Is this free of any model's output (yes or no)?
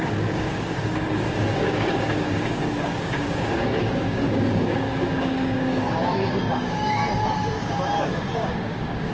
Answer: no